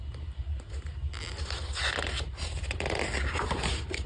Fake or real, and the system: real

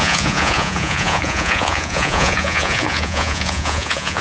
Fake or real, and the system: fake, vocoder, Vocos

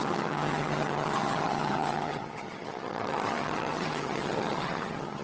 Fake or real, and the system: fake, vocoder, HiFi-GAN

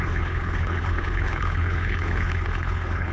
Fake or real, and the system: fake, codec, HILCodec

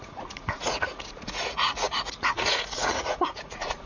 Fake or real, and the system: fake, vocoder, Vocos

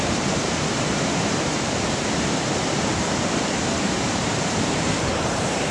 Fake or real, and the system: fake, vocoder, BigVGAN v2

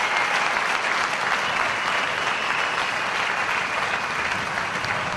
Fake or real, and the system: real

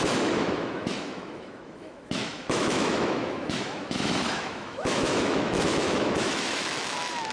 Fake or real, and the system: fake, autoencoder, DAC-VAE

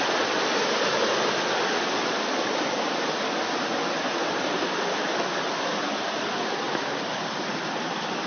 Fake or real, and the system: real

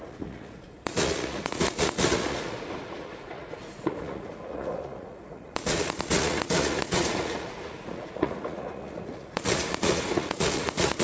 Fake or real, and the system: fake, vocoder, Vocos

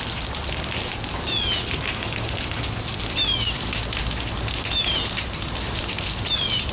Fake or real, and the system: real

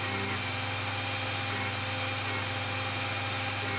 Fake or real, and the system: real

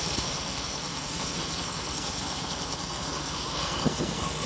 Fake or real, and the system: fake, codec, SNAC